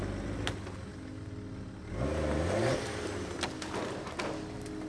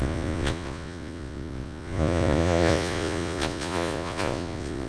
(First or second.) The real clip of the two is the first